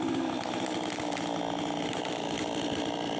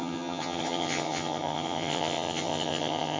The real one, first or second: first